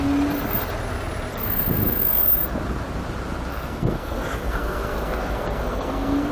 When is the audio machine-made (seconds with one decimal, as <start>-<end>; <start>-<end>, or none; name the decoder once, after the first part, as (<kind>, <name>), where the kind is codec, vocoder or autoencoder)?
1.3-2.2 (codec, SNAC); 3.5-6.3